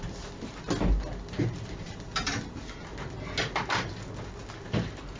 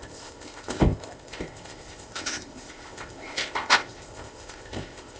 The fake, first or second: second